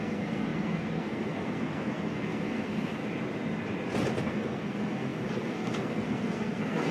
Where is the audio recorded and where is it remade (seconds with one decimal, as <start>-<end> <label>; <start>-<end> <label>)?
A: 0.0-3.0 remade; 3.0-4.2 recorded; 4.2-6.9 remade